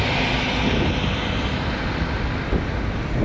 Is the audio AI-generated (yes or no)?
no